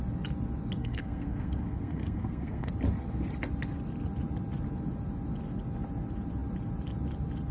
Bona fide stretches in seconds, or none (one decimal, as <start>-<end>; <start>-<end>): 0.0-0.8; 2.7-7.5